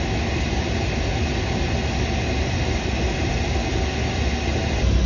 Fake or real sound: real